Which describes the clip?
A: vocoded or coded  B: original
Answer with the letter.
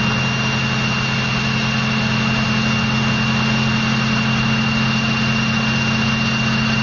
B